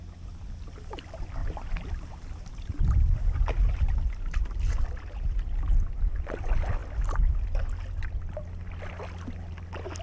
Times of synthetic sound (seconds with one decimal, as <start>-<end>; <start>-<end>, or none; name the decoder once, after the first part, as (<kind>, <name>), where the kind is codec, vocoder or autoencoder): none